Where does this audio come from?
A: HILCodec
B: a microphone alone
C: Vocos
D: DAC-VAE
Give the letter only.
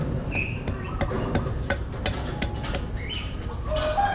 B